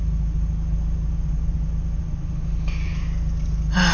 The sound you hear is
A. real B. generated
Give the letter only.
A